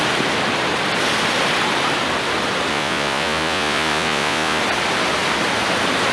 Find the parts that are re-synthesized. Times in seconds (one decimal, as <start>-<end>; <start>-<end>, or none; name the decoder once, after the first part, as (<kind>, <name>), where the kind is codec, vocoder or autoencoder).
2.7-4.6 (vocoder, Vocos)